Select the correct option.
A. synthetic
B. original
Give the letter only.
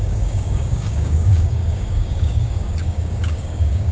A